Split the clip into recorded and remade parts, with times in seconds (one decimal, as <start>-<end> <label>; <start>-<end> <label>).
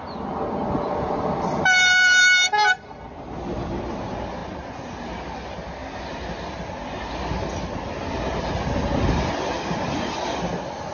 0.0-10.9 recorded